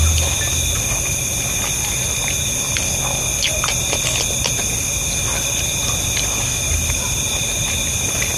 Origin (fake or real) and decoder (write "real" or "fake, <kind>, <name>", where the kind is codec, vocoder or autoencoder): real